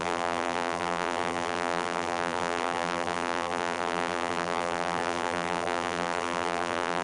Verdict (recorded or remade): remade